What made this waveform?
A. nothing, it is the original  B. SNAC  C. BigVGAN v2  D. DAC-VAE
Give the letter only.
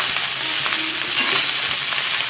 A